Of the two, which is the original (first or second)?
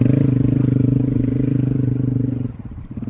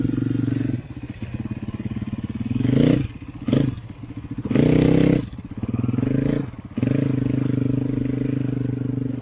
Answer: second